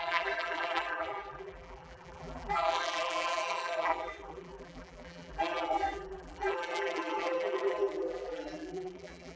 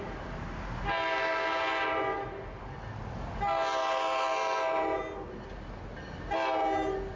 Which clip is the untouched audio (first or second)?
second